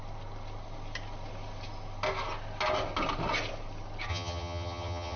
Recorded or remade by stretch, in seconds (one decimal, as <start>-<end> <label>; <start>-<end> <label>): 0.0-4.1 recorded; 4.1-5.2 remade